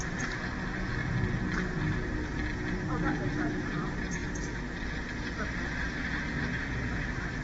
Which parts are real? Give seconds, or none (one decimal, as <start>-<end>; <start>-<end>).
0.0-7.4